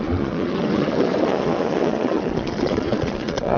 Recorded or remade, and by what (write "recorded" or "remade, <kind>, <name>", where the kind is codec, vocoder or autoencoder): remade, vocoder, Vocos